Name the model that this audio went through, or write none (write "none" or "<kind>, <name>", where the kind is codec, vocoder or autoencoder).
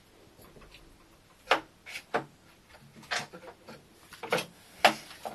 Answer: none